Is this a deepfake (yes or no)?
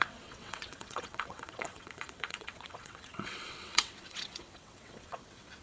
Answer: yes